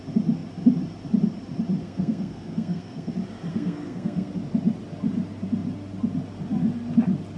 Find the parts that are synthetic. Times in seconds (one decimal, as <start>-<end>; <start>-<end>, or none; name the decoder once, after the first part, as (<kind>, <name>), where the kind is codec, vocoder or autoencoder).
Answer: 1.8-3.1 (codec, SNAC); 3.5-4.3